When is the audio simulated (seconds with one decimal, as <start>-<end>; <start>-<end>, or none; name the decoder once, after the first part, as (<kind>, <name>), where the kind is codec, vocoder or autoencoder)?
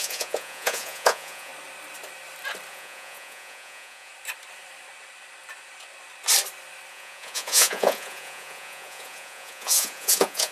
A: 0.0-1.5 (vocoder, Vocos); 2.7-4.1; 6.9-10.5